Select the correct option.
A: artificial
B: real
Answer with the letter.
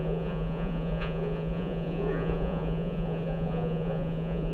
A